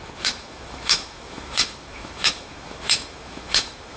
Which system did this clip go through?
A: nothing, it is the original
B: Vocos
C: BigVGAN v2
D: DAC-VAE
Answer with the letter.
D